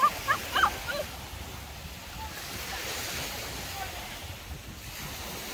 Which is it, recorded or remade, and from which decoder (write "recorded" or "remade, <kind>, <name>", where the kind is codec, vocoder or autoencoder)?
recorded